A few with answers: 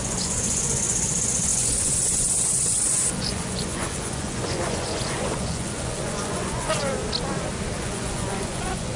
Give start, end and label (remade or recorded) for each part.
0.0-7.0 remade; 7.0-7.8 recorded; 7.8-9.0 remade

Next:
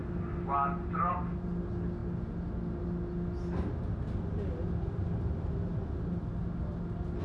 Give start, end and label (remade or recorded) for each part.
0.0-7.2 recorded

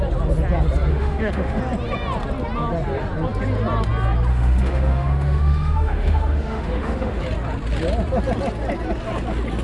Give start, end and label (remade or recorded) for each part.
0.0-0.9 recorded; 0.9-1.6 remade; 1.6-4.3 recorded; 4.3-7.2 remade; 7.2-9.6 recorded

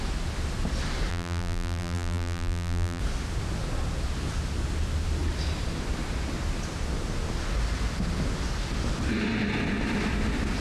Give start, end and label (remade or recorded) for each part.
0.0-1.1 recorded; 1.1-3.0 remade; 3.0-10.6 recorded

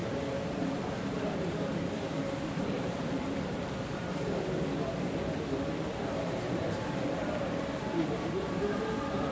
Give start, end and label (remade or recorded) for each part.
0.0-4.6 remade; 4.6-6.6 recorded; 6.6-7.1 remade; 7.1-9.3 recorded

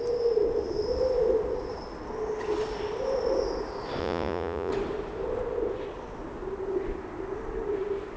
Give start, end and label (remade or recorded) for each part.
0.0-4.0 recorded; 4.0-4.7 remade; 4.7-8.2 recorded

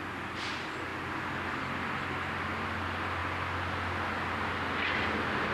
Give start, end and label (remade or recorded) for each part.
0.0-5.5 recorded